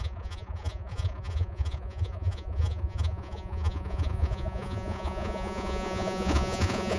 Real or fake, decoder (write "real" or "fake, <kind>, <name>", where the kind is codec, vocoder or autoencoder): fake, vocoder, Vocos